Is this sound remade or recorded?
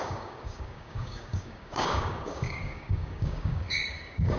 remade